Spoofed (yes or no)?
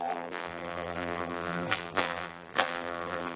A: yes